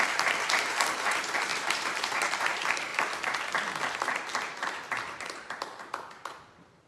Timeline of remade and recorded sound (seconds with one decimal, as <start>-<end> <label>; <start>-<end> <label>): 0.0-2.9 remade; 2.9-4.0 recorded; 4.0-6.9 remade